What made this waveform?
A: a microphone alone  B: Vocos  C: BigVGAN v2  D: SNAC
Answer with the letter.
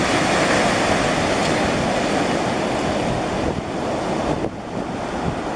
A